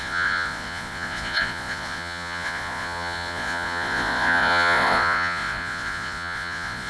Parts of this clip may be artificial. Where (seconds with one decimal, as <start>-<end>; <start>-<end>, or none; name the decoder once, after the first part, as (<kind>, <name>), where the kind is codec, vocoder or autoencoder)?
0.0-6.9 (vocoder, Vocos)